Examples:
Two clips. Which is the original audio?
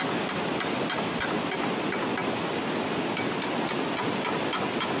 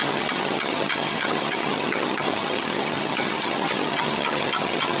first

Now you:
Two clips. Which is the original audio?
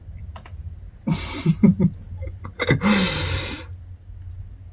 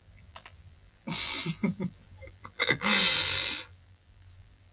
first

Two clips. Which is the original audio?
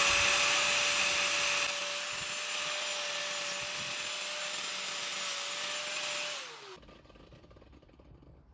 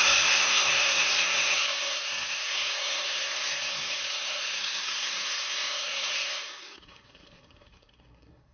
first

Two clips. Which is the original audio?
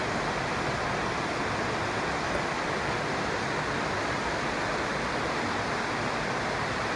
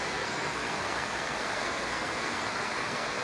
first